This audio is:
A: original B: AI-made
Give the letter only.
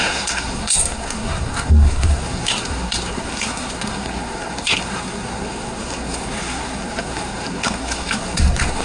B